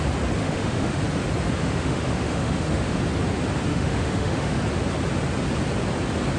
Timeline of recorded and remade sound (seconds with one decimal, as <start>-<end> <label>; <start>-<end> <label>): 0.0-0.4 recorded; 0.4-1.0 remade; 1.0-1.6 recorded; 1.6-3.0 remade; 3.0-3.7 recorded; 3.7-4.6 remade; 4.6-6.4 recorded